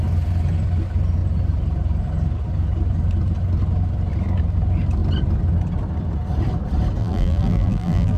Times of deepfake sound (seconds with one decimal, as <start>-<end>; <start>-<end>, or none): 7.0-8.2